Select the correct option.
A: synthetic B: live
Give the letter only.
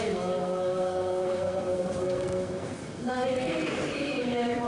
A